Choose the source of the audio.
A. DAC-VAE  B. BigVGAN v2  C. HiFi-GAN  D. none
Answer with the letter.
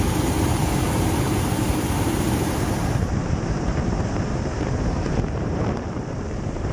B